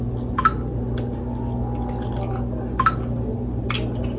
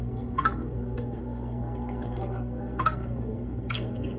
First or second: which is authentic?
first